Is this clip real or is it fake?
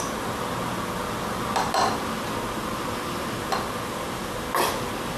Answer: real